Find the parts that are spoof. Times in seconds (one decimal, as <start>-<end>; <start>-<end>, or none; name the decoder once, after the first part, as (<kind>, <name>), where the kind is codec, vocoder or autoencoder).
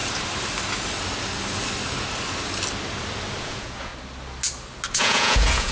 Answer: 3.4-3.9 (vocoder, Vocos); 4.9-5.7